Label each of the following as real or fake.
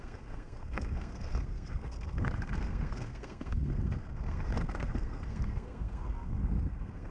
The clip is fake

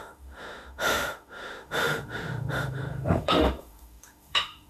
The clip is fake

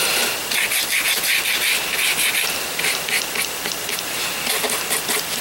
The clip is real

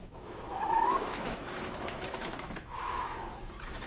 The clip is fake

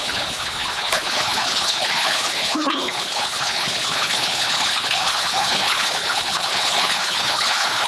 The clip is fake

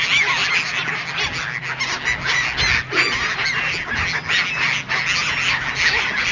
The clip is real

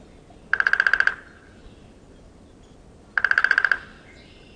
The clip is real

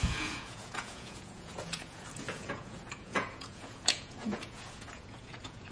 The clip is fake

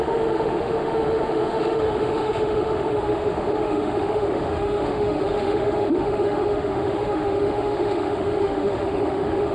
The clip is fake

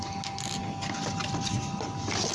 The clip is real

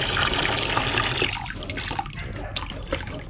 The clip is real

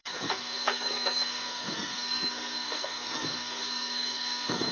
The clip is fake